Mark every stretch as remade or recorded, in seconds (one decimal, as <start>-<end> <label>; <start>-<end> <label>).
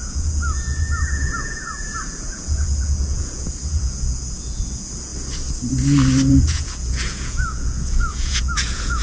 0.0-5.1 remade; 5.1-6.3 recorded; 6.3-9.0 remade